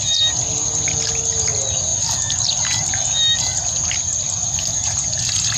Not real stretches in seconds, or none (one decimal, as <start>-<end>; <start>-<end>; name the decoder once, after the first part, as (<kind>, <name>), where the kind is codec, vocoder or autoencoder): none